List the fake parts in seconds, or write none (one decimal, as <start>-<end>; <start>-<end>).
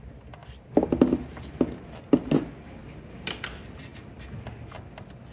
2.8-3.4; 3.9-4.4